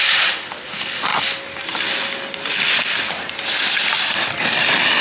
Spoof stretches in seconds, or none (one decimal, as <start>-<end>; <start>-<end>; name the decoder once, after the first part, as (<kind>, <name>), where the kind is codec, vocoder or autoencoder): none